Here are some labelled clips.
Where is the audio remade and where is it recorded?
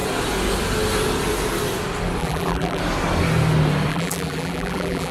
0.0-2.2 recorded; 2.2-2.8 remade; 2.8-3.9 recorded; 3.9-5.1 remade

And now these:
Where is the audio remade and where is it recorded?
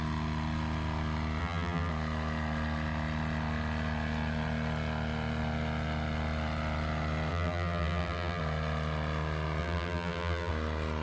0.0-1.4 recorded; 1.4-1.9 remade; 1.9-7.3 recorded; 7.3-8.4 remade; 8.4-9.6 recorded; 9.6-10.5 remade; 10.5-11.0 recorded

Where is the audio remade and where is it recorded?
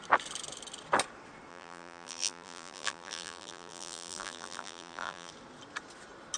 0.0-1.5 recorded; 1.5-5.3 remade; 5.3-6.4 recorded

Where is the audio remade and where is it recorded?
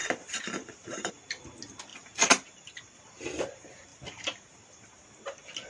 0.0-1.1 remade; 1.1-1.9 recorded; 1.9-3.2 remade; 3.2-3.9 recorded; 3.9-5.0 remade; 5.0-5.7 recorded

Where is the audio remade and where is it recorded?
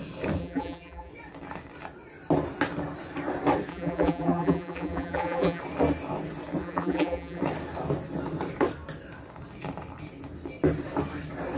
0.0-0.4 recorded; 0.4-1.1 remade; 1.1-3.7 recorded; 3.7-5.6 remade; 5.6-6.6 recorded; 6.6-7.4 remade; 7.4-11.6 recorded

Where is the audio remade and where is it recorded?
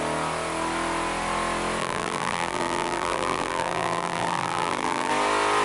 0.0-1.8 recorded; 1.8-5.1 remade; 5.1-5.6 recorded